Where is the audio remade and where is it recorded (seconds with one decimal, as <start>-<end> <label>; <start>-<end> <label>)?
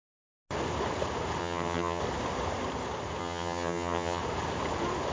0.0-1.4 recorded; 1.4-2.0 remade; 2.0-3.2 recorded; 3.2-4.2 remade; 4.2-5.1 recorded